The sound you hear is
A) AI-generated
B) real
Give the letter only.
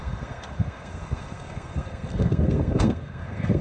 A